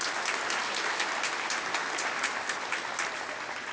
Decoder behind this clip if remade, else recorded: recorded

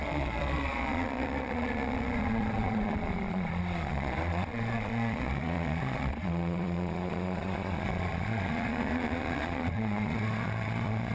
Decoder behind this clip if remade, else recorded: remade, vocoder, Vocos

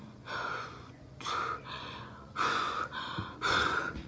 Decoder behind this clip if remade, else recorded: remade, vocoder, Vocos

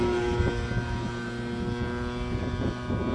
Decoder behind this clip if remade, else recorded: recorded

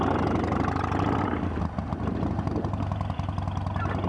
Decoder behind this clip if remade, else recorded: recorded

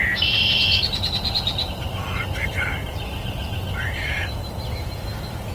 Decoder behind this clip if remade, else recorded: recorded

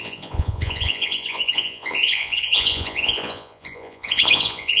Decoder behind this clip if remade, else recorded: remade, vocoder, Vocos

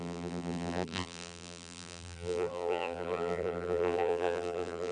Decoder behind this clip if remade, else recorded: remade, vocoder, BigVGAN v2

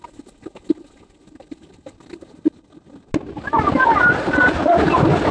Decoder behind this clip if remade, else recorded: recorded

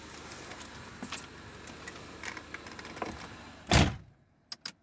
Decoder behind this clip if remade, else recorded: recorded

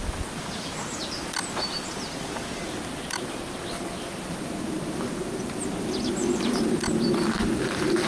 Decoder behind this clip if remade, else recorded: recorded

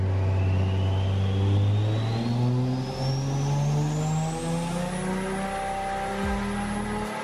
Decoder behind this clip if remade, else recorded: recorded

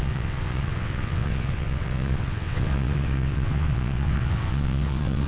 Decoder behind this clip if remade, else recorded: remade, vocoder, WaveNeXt